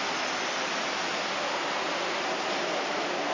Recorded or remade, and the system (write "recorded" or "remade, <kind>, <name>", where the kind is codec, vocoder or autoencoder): recorded